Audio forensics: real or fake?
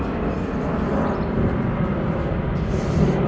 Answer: real